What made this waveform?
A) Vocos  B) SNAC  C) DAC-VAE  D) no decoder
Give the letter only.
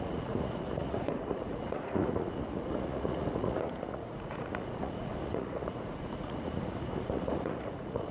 A